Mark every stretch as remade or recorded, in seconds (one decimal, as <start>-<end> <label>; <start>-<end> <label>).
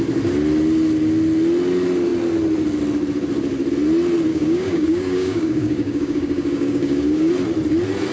0.0-4.3 recorded; 4.3-7.3 remade; 7.3-8.1 recorded